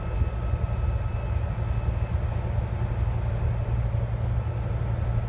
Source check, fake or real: real